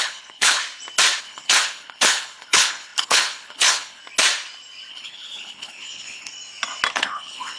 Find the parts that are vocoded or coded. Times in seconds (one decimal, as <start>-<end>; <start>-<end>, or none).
0.0-0.6; 1.2-4.0; 4.9-6.3; 6.9-7.6